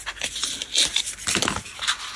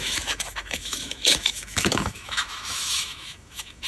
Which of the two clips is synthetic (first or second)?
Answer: second